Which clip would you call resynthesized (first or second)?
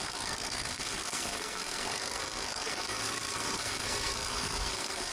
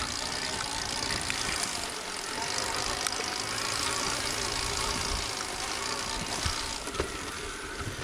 first